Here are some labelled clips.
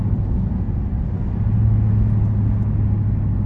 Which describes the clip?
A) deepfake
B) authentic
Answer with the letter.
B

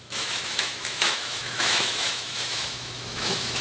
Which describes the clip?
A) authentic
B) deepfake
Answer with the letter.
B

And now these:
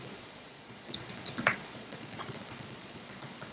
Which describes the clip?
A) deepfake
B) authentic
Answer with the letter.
A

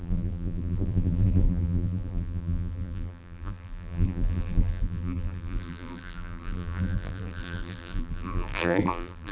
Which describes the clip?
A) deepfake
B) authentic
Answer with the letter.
A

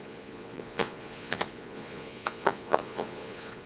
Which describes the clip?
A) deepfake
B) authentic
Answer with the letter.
A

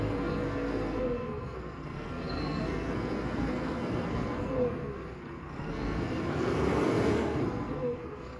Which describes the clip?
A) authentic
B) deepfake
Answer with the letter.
B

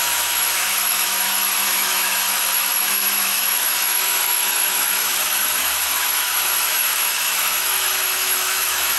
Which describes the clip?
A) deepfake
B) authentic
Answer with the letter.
A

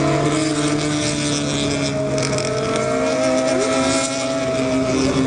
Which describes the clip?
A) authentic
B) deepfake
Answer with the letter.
A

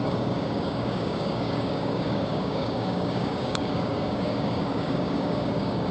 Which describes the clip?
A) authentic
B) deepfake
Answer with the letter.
B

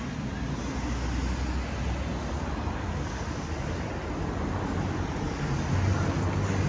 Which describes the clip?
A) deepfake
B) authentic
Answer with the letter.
B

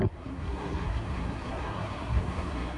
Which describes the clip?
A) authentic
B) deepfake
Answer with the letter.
B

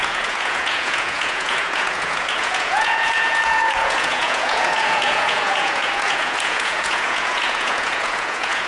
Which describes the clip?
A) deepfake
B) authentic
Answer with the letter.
A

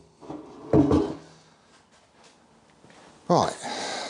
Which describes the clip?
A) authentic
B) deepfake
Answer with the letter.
A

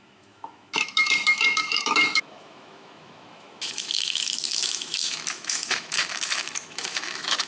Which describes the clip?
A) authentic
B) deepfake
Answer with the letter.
B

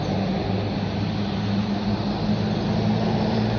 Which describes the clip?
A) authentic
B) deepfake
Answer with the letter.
A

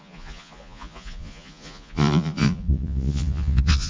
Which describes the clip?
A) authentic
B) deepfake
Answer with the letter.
B